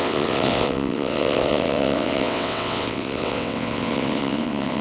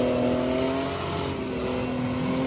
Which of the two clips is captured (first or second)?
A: second